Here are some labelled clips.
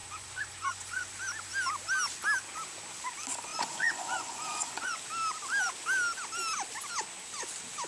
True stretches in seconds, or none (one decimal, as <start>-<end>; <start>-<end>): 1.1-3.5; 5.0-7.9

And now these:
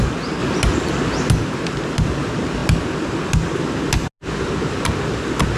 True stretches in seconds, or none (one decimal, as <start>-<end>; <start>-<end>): 0.0-5.6

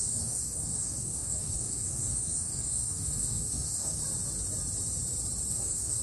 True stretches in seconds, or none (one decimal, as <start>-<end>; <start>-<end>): 4.0-5.5

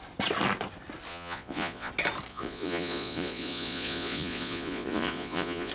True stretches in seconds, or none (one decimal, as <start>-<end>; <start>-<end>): 0.0-1.1; 1.9-2.3